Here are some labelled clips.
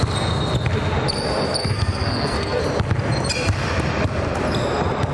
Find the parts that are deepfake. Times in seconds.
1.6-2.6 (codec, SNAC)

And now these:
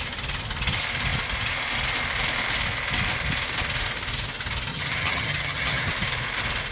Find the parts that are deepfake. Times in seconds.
4.7-5.9 (vocoder, HiFi-GAN)

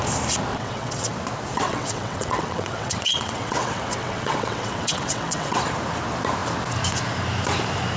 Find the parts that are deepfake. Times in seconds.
0.5-1.1 (vocoder, WaveNeXt); 1.5-5.6

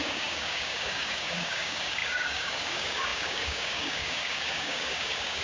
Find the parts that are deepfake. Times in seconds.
0.0-5.4 (codec, DAC)